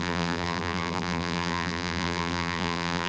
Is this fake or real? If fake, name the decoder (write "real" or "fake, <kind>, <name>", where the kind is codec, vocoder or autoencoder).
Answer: fake, vocoder, BigVGAN v2